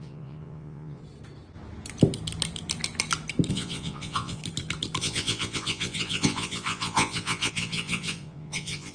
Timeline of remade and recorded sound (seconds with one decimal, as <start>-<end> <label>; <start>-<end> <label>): 0.0-1.0 remade; 1.0-3.5 recorded; 3.5-4.4 remade; 4.4-5.0 recorded; 5.0-8.9 remade